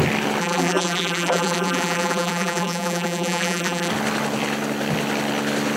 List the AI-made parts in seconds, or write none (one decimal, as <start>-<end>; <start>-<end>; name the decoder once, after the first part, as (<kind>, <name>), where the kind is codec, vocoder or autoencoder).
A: 0.4-3.9 (vocoder, BigVGAN v2)